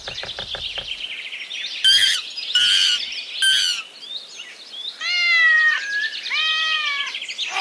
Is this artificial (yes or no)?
no